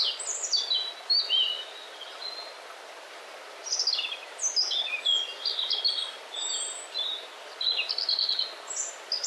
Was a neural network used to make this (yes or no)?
no